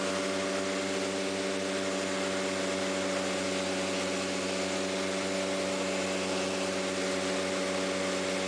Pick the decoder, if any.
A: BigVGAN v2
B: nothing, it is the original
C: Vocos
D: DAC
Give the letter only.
B